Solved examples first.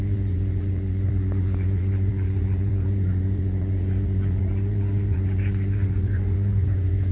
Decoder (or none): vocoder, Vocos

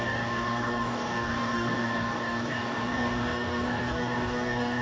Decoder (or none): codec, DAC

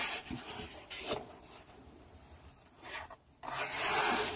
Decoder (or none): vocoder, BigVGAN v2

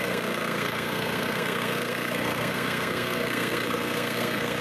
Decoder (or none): codec, SNAC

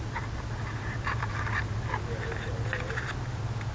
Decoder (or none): none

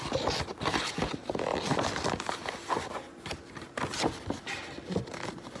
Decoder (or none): none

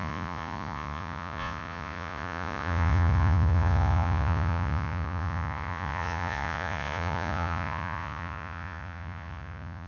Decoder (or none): vocoder, Vocos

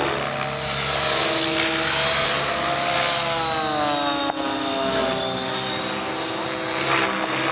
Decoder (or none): none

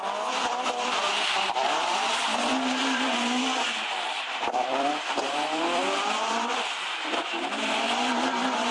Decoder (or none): vocoder, BigVGAN v2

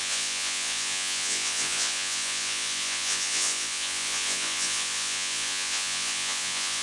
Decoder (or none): vocoder, Vocos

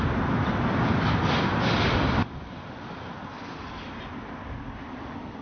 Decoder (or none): none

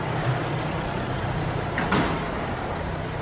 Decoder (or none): vocoder, BigVGAN v2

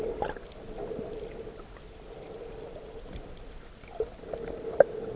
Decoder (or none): none